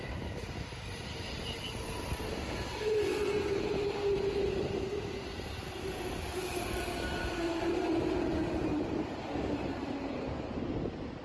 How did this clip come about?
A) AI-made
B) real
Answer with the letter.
A